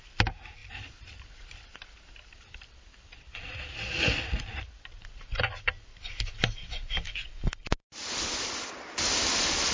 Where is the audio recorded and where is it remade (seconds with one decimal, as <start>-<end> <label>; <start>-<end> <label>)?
0.0-0.6 recorded; 0.6-5.4 remade; 5.4-9.7 recorded